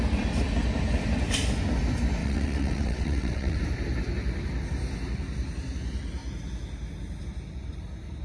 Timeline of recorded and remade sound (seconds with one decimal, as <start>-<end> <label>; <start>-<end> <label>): 0.0-2.2 recorded; 2.2-3.6 remade; 3.6-8.2 recorded